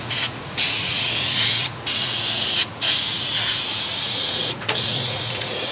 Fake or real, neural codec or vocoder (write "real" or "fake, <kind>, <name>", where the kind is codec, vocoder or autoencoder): fake, vocoder, Vocos